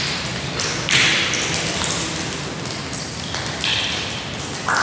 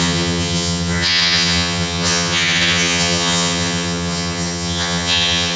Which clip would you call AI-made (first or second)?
second